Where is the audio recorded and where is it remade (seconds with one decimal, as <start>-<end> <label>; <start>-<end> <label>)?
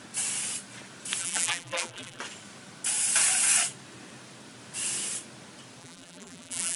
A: 0.0-1.2 recorded; 1.2-2.2 remade; 2.2-5.8 recorded; 5.8-6.8 remade